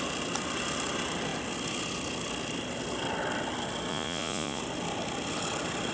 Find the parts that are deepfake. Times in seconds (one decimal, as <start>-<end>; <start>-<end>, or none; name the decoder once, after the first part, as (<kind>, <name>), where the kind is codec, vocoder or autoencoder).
3.9-4.6 (vocoder, Vocos)